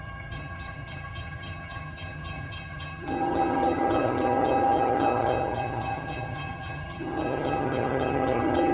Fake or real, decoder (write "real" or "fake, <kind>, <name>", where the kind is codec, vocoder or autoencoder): fake, vocoder, HiFi-GAN